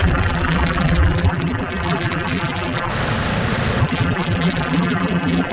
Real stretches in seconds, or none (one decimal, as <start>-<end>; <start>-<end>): 2.9-3.8